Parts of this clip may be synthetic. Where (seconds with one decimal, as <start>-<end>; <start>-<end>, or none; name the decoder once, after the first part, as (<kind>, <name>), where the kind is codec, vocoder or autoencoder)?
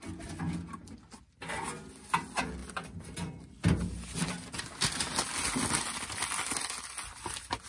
none